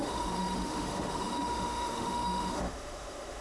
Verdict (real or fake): fake